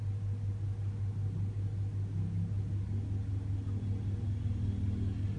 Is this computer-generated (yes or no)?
no